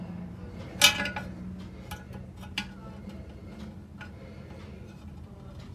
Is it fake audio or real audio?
real